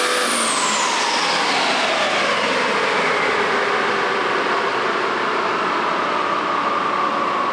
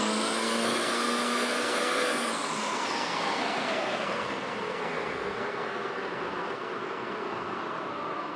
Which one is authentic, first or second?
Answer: first